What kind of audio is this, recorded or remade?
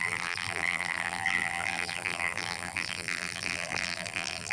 remade